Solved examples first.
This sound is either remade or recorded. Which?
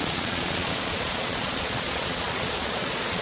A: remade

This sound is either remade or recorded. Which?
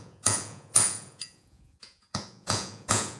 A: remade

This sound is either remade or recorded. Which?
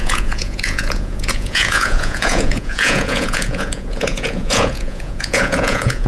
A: remade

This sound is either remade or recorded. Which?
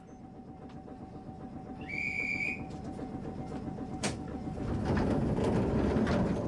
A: recorded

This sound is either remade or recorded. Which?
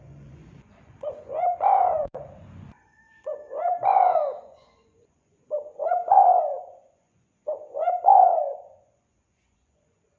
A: remade